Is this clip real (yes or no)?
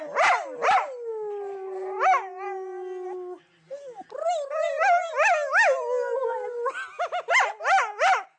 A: yes